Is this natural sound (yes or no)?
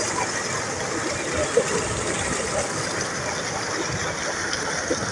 yes